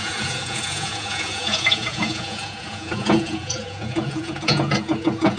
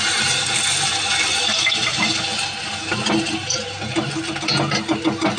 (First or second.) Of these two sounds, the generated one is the first